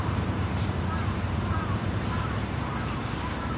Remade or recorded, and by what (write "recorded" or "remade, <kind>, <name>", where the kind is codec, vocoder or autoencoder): remade, vocoder, BigVGAN v2